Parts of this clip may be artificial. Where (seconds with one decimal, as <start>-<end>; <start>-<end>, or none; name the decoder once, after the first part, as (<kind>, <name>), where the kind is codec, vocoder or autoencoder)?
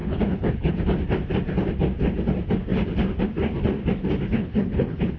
0.0-0.7 (codec, HILCodec); 4.3-5.2